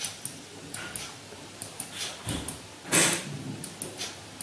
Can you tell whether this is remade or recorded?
recorded